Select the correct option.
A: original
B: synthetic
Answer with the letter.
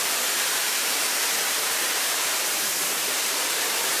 B